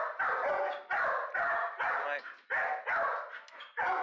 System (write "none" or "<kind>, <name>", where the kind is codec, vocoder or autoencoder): none